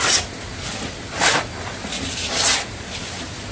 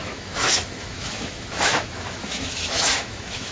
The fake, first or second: second